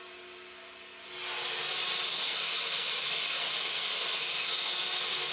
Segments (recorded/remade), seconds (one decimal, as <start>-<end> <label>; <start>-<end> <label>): 0.0-2.1 recorded; 2.1-5.3 remade